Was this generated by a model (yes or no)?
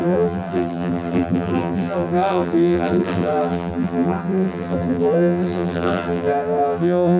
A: yes